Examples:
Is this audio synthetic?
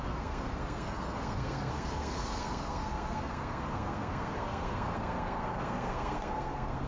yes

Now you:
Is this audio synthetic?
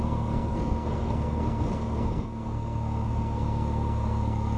yes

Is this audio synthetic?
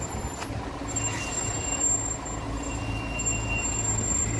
no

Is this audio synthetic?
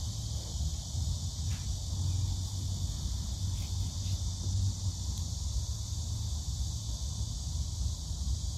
no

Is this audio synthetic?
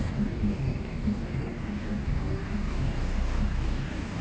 yes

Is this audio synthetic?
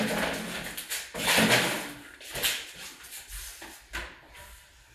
no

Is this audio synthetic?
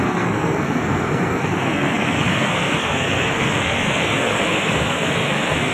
yes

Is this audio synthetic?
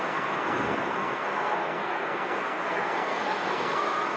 yes